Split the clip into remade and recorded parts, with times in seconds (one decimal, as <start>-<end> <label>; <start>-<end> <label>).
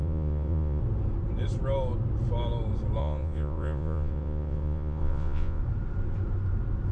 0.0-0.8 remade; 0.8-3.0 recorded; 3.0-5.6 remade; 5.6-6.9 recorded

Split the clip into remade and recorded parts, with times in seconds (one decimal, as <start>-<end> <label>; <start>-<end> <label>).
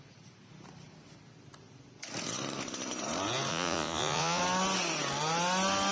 0.0-3.5 recorded; 3.5-4.4 remade; 4.4-5.9 recorded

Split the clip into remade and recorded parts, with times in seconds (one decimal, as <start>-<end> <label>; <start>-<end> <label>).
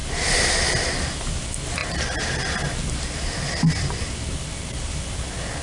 0.0-5.6 recorded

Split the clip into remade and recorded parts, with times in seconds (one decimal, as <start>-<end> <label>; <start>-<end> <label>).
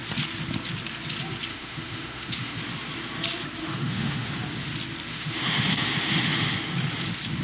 0.0-1.5 recorded; 1.5-2.6 remade; 2.6-3.6 recorded; 3.6-4.3 remade; 4.3-5.1 recorded; 5.1-6.3 remade; 6.3-7.4 recorded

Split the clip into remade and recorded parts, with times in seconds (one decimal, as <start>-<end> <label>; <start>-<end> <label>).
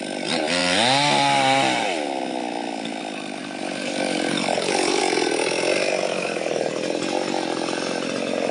0.0-3.4 recorded; 3.4-5.0 remade; 5.0-6.1 recorded; 6.1-6.7 remade; 6.7-8.5 recorded